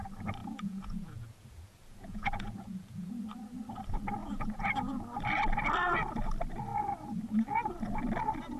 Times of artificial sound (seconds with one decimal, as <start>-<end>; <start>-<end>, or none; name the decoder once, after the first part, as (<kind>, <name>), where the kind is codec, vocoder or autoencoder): 0.4-3.1 (vocoder, Vocos); 4.2-5.0